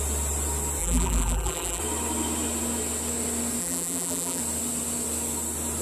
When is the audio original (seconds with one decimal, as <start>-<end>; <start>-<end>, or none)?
0.0-0.8; 1.8-3.6; 4.4-5.8